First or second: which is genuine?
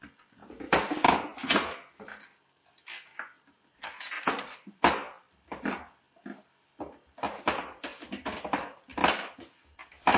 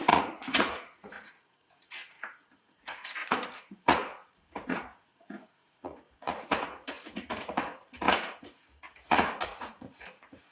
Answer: first